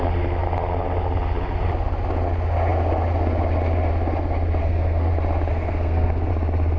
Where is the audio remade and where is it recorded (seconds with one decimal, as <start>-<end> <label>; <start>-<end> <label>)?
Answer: 0.0-4.6 recorded; 4.6-5.1 remade; 5.1-5.5 recorded; 5.5-6.3 remade; 6.3-6.8 recorded